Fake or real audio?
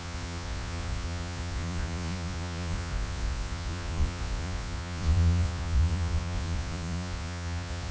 fake